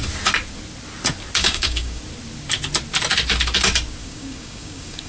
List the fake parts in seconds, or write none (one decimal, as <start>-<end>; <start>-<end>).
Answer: 1.4-2.0; 4.0-5.1